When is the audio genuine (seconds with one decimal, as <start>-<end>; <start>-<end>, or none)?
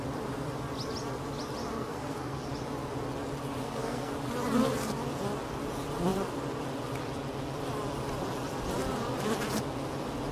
0.0-1.7; 2.5-3.6; 4.1-10.3